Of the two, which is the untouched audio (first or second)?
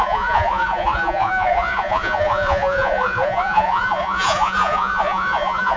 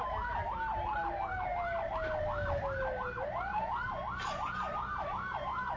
second